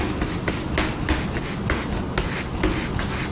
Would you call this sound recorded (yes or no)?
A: yes